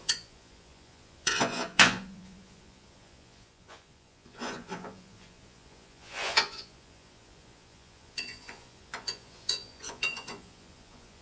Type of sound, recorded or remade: remade